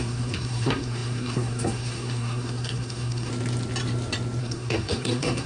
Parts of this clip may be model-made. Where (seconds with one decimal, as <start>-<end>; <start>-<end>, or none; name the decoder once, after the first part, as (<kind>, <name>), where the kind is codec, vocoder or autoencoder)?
0.0-3.3 (codec, SNAC); 4.4-5.5